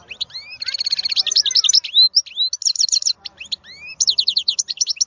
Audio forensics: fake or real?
real